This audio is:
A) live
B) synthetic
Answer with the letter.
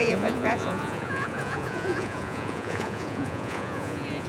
B